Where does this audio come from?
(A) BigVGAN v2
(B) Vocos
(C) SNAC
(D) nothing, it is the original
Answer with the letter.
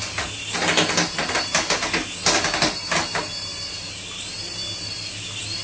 D